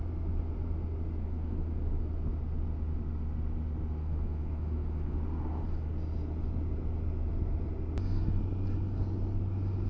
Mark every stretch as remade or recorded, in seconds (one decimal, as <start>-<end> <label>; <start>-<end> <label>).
0.0-1.2 recorded; 1.2-1.8 remade; 1.8-4.0 recorded; 4.0-5.2 remade; 5.2-9.9 recorded